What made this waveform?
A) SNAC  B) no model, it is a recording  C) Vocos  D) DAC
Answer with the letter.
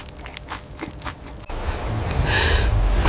B